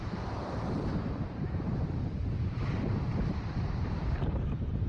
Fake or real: fake